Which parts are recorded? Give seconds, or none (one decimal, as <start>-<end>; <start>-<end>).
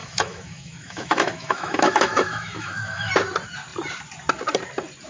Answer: 3.1-5.1